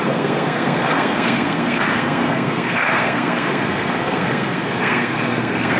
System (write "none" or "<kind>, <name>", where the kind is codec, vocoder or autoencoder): codec, SNAC